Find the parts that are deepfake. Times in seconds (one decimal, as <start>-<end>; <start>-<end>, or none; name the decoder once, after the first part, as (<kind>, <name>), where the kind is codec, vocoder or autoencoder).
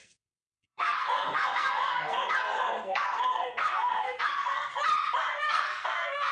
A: 0.0-4.8 (codec, SNAC); 5.3-6.3